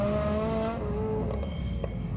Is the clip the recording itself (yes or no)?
yes